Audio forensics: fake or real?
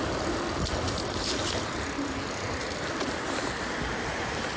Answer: real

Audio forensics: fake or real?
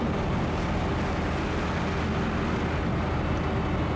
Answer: real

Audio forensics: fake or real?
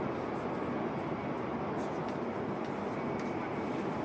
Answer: real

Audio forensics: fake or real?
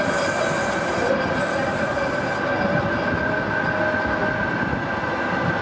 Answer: real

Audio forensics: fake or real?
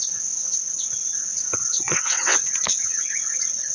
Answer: fake